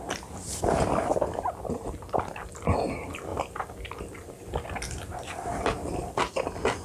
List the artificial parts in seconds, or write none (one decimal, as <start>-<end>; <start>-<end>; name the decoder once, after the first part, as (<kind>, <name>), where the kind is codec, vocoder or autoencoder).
1.1-2.5 (vocoder, BigVGAN v2); 3.3-6.2